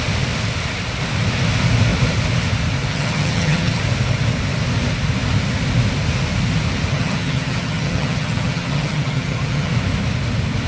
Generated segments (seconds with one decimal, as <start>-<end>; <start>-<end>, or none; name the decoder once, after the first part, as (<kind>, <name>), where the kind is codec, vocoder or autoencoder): 2.9-3.8 (vocoder, HiFi-GAN); 6.9-9.7